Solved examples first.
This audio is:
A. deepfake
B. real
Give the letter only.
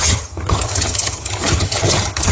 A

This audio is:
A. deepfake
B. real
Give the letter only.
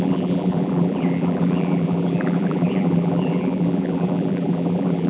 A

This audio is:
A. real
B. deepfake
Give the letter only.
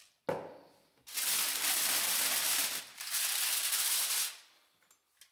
A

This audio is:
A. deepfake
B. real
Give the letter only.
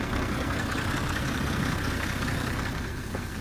A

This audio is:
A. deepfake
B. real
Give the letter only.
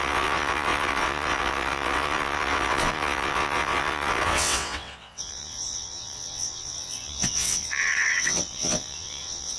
A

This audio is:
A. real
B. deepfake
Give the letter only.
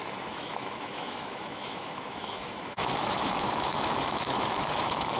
B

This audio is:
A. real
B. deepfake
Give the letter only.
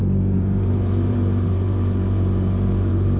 B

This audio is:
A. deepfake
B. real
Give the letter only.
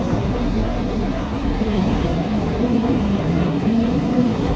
A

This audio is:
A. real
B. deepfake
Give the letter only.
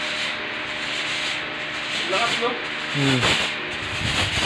A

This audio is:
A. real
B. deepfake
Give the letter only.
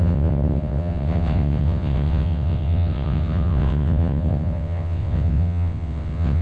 B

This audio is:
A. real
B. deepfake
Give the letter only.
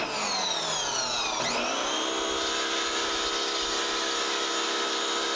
A